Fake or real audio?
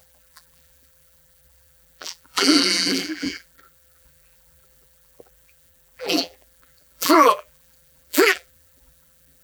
fake